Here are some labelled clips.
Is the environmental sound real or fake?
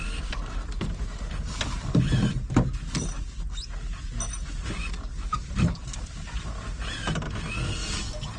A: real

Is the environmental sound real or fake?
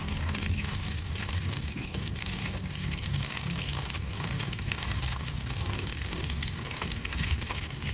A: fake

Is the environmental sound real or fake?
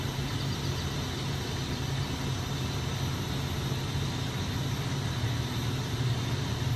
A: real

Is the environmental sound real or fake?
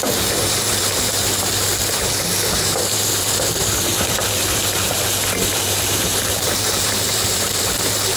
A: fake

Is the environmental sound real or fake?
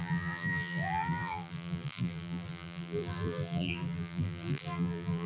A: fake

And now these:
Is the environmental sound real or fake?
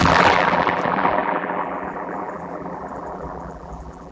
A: fake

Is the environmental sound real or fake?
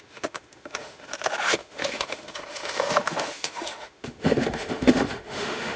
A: fake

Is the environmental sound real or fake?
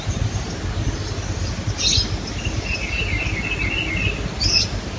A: real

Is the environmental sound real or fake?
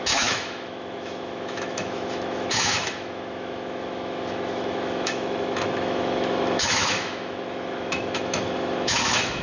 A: fake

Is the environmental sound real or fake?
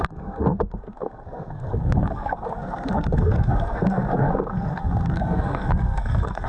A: fake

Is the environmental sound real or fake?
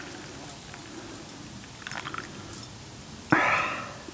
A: real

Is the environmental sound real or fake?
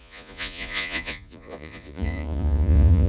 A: fake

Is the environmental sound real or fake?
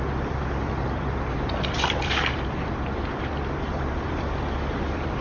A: fake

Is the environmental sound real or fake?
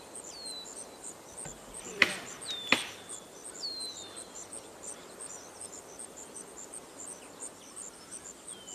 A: real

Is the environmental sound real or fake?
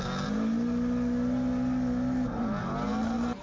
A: real